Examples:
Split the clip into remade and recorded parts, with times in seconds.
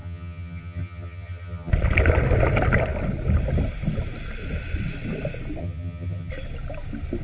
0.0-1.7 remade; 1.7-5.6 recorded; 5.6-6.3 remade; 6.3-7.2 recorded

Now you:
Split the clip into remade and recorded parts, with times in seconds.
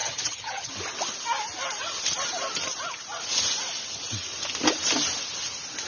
0.0-0.7 remade; 0.7-5.9 recorded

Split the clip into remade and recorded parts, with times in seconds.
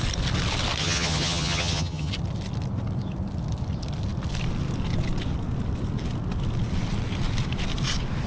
0.0-0.8 recorded; 0.8-2.1 remade; 2.1-8.3 recorded